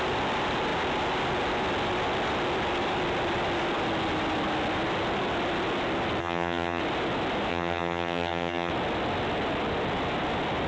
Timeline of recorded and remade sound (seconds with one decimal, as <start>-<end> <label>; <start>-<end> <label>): 0.0-6.2 recorded; 6.2-6.8 remade; 6.8-7.5 recorded; 7.5-8.7 remade; 8.7-10.7 recorded